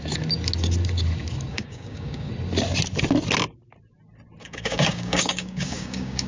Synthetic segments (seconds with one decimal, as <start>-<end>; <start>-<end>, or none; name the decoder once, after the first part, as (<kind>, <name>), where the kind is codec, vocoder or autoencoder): 1.5-2.3 (codec, DAC); 4.4-6.3